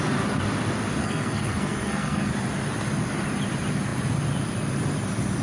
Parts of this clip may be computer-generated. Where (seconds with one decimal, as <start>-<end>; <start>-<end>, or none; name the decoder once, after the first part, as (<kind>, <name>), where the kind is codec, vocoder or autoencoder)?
1.0-2.3 (codec, SNAC)